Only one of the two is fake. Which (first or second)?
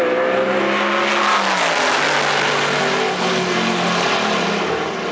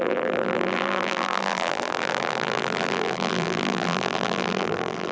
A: second